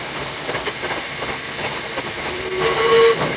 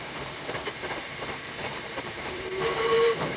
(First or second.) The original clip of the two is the first